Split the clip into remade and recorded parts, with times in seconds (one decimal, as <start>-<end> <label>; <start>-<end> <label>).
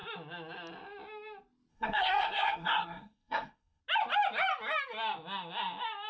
0.0-1.7 recorded; 1.7-3.8 remade; 3.8-6.1 recorded